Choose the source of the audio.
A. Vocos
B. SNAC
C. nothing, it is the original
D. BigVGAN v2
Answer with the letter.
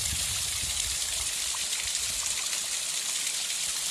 C